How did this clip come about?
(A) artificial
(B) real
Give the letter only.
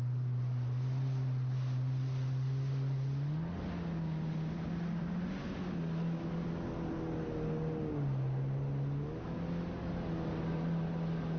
B